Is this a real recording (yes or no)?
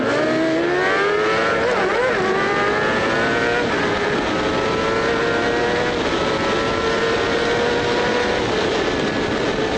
yes